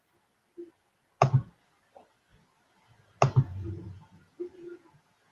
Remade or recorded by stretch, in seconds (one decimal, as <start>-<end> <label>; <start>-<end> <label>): 0.0-3.5 recorded; 3.5-5.3 remade